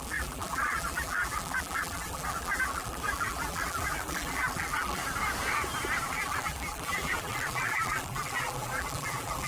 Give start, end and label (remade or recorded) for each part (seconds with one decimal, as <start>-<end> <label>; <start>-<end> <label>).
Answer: 0.0-5.0 remade; 5.0-6.1 recorded; 6.1-9.5 remade